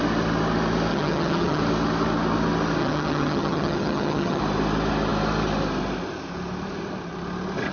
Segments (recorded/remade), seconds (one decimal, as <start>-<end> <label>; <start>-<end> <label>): 0.0-0.9 recorded; 0.9-1.6 remade; 1.6-2.8 recorded; 2.8-4.4 remade; 4.4-7.7 recorded